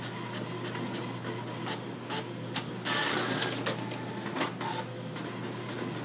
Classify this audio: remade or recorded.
recorded